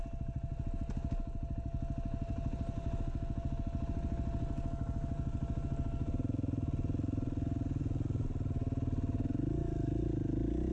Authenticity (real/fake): real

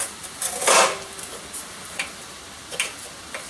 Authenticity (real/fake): real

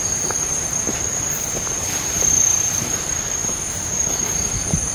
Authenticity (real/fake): fake